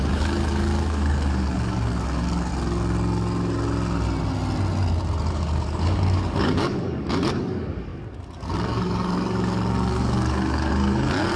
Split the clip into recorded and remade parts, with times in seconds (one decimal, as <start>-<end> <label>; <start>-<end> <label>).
0.0-2.5 remade; 2.5-5.3 recorded; 5.3-11.4 remade